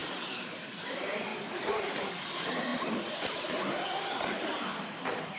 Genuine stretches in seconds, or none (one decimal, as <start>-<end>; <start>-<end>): 0.8-1.3; 1.9-5.4